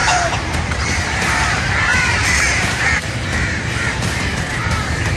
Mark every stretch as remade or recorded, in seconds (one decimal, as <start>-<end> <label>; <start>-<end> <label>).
0.0-5.2 remade